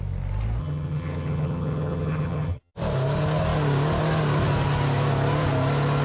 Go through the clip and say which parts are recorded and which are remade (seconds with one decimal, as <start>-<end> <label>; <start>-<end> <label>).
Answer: 0.0-0.6 recorded; 0.6-2.7 remade; 2.7-6.0 recorded